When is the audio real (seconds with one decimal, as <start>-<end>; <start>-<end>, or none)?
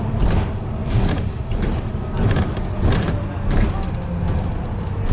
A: 0.0-0.8; 2.4-5.1